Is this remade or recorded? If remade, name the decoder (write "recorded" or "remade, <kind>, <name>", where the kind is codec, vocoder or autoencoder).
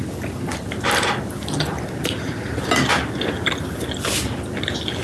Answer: recorded